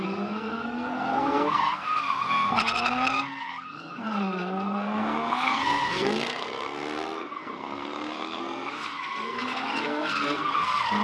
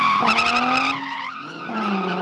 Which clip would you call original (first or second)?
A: second